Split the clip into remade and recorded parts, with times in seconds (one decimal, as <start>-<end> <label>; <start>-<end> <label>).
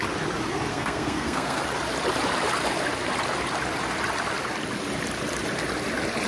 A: 0.0-0.7 recorded; 0.7-1.6 remade; 1.6-6.3 recorded